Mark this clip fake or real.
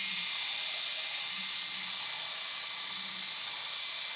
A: real